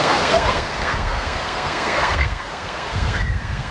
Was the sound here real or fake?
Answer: fake